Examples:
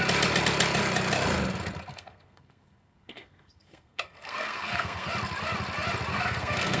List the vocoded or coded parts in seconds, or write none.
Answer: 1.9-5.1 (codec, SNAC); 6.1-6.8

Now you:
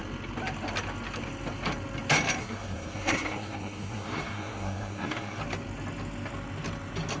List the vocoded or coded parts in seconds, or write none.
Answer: 2.4-5.4 (codec, SNAC)